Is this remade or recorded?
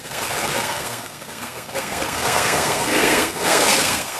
remade